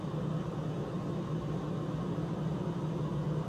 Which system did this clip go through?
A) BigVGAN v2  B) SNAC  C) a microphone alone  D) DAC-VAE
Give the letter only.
C